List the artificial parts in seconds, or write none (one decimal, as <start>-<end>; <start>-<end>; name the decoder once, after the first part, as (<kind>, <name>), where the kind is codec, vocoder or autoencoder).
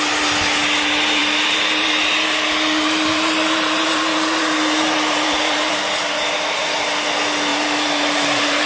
1.2-5.7 (vocoder, BigVGAN v2); 7.5-8.7